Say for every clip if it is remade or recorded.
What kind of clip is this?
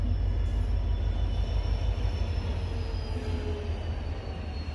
recorded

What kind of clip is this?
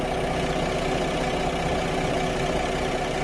recorded